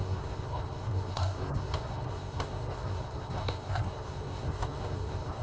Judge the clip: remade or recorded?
remade